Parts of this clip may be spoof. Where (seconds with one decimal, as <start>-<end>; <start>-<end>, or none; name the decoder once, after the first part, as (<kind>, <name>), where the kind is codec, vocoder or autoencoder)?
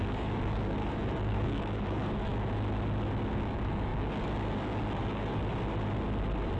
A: 0.0-2.3 (codec, DAC); 3.3-5.4